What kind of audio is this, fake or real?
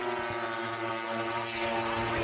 real